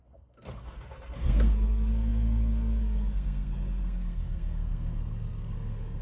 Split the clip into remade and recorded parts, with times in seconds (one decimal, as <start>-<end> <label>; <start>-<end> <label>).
0.0-6.0 remade